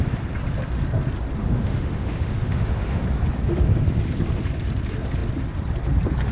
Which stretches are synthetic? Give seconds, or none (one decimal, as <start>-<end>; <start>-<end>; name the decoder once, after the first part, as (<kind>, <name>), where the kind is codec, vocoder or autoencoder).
1.4-3.0 (autoencoder, DAC-VAE)